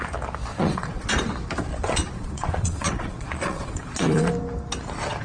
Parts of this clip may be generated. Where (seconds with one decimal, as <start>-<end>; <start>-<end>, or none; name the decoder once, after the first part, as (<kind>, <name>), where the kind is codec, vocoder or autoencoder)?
0.5-1.1 (vocoder, Vocos); 1.7-4.3